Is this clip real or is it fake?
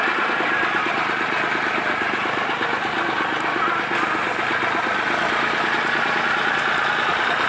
real